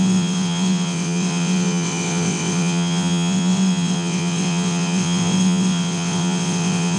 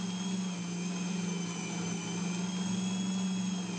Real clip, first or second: second